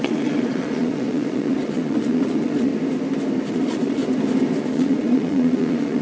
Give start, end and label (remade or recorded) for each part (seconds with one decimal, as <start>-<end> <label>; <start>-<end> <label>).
0.0-2.7 remade; 2.7-3.5 recorded; 3.5-4.0 remade; 4.0-4.6 recorded; 4.6-6.0 remade